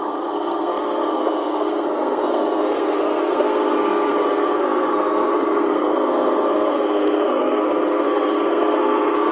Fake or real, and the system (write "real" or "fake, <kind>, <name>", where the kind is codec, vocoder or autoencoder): fake, codec, SNAC